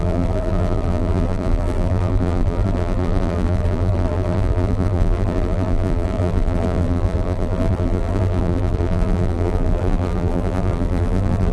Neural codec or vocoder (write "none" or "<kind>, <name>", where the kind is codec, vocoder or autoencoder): vocoder, BigVGAN v2